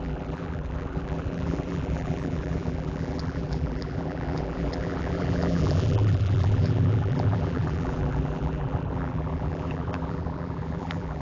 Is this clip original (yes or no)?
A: no